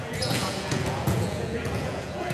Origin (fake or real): fake